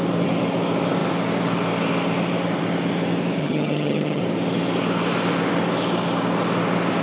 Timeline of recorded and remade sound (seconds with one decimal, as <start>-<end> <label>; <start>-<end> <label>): 0.0-3.4 recorded; 3.4-4.2 remade; 4.2-7.0 recorded